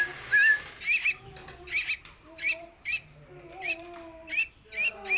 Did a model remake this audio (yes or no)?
no